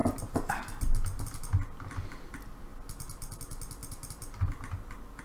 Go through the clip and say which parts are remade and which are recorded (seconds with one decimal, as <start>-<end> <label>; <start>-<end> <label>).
0.0-3.8 recorded; 3.8-5.2 remade